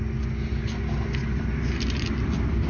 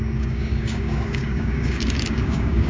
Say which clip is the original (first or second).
first